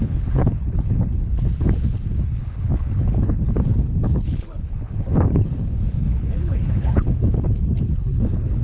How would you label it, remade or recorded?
remade